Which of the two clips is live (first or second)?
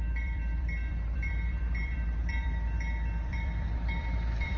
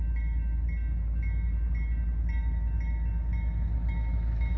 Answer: second